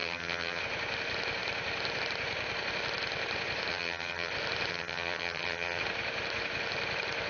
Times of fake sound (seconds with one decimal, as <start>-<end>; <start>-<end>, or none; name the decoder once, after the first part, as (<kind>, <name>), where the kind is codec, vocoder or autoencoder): 0.0-0.6 (vocoder, HiFi-GAN); 3.7-4.3; 4.7-5.8